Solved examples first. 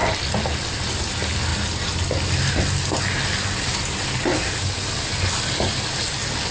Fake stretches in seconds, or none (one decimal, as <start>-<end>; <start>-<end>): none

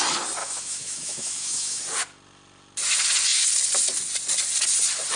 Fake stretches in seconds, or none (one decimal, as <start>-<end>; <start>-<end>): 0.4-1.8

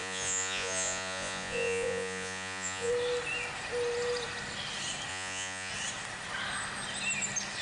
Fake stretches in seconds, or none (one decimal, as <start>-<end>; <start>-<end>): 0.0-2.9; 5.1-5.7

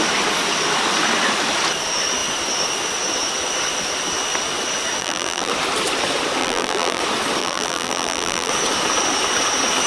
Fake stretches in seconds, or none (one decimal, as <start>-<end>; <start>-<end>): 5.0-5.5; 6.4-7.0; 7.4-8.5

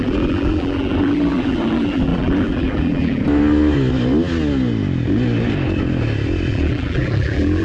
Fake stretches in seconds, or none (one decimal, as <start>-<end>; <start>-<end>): 0.0-3.2; 6.5-7.6

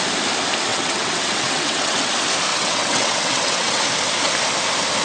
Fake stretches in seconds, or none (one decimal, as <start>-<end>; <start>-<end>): 0.7-2.1; 2.5-3.8

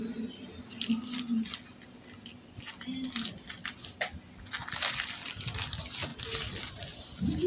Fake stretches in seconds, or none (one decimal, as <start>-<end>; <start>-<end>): none